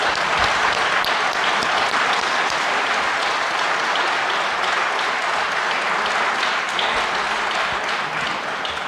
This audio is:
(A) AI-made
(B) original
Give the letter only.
B